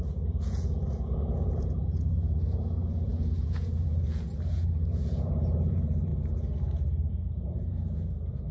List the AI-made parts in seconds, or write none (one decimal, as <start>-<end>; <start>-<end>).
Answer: 0.0-6.1; 7.1-8.5